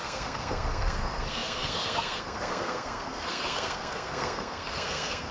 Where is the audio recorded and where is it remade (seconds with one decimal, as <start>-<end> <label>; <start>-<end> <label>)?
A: 0.0-5.3 remade